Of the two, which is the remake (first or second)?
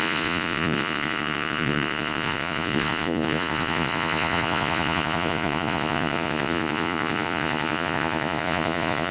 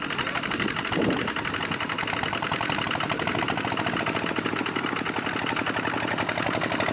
first